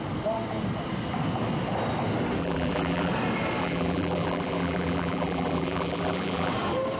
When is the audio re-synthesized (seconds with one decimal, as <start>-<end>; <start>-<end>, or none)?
2.4-3.1; 3.6-6.5